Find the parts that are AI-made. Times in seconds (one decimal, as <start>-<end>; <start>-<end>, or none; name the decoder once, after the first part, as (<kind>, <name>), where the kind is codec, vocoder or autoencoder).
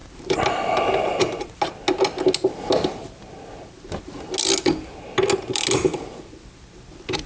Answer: none